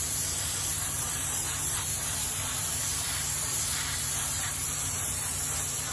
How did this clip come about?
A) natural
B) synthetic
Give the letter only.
B